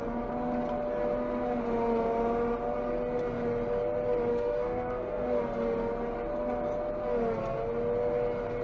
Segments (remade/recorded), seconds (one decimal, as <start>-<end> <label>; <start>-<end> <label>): 0.0-4.3 recorded; 4.3-5.4 remade; 5.4-8.6 recorded